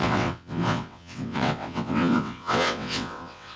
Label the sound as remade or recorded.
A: remade